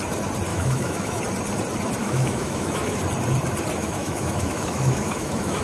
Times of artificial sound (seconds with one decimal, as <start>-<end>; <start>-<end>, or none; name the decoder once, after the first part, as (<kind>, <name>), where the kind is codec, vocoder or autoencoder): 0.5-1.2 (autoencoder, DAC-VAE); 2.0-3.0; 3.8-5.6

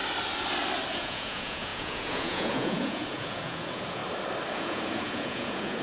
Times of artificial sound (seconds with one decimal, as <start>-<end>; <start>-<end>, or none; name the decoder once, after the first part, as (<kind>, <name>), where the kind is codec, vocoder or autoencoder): 0.9-4.0 (vocoder, Vocos); 4.5-5.8

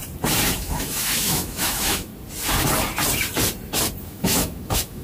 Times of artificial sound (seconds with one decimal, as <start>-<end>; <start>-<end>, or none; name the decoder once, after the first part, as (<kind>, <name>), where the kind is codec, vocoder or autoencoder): 0.5-2.1 (autoencoder, DAC-VAE); 4.0-5.0

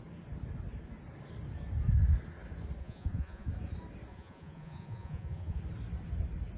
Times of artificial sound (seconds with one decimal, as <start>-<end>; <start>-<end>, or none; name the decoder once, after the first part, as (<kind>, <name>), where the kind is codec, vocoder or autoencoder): 2.8-3.5 (vocoder, Vocos); 4.1-5.6

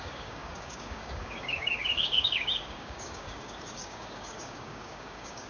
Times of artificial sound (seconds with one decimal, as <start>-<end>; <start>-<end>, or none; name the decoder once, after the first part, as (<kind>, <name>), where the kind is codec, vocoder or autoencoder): 0.0-5.5 (codec, DAC)

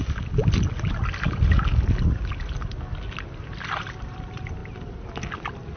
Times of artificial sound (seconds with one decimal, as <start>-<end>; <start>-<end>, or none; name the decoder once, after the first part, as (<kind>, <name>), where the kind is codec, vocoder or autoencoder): none

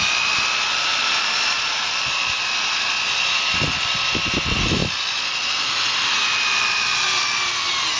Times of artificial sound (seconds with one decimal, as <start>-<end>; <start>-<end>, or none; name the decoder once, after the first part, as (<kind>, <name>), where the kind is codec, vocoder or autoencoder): 0.9-2.0 (vocoder, BigVGAN v2)